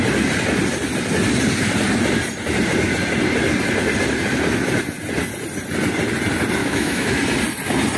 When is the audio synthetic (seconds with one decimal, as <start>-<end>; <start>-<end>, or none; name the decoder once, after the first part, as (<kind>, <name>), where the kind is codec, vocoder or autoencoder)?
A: 6.6-7.2 (autoencoder, DAC-VAE)